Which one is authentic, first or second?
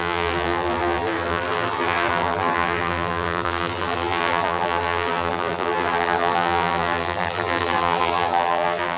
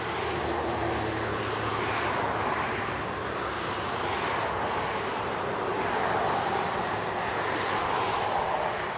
second